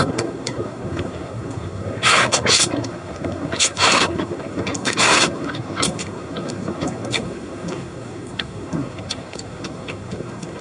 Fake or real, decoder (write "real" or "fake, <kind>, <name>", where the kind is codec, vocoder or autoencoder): fake, codec, SNAC